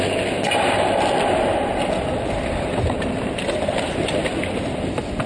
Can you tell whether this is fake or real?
real